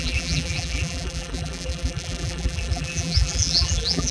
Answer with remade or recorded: remade